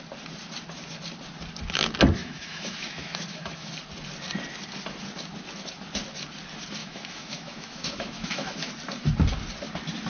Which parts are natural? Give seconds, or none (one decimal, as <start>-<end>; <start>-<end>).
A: 0.0-2.2; 3.7-6.8; 8.7-10.1

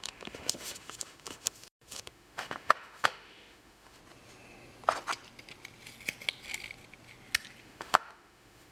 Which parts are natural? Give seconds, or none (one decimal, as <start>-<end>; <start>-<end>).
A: 4.0-7.6

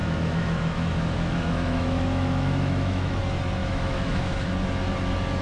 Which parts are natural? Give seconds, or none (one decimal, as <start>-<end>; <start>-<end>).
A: 3.2-3.6; 4.5-5.4

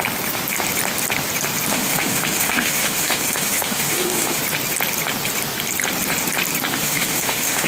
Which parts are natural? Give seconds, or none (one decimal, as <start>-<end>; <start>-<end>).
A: 0.0-1.7; 4.4-6.7